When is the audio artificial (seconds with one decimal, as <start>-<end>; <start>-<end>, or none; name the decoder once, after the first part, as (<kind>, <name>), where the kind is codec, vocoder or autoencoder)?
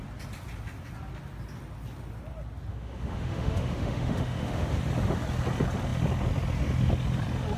2.7-4.8 (autoencoder, DAC-VAE)